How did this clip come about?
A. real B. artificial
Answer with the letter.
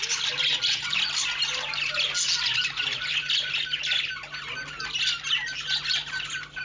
A